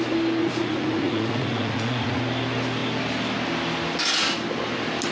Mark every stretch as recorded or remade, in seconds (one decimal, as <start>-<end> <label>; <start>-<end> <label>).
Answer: 0.0-0.4 recorded; 0.4-2.2 remade; 2.2-5.1 recorded